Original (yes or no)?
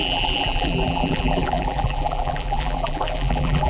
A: no